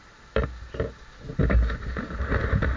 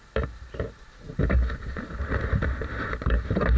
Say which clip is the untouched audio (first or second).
first